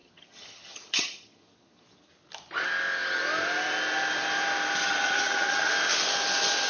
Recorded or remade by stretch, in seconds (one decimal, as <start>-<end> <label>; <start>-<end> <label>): 0.0-2.1 remade; 2.1-4.8 recorded; 4.8-5.7 remade; 5.7-6.7 recorded